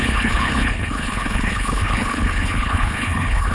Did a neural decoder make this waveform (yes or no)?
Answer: yes